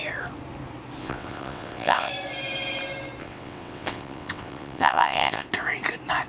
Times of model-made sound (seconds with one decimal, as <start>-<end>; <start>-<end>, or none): 1.0-2.1; 3.2-5.5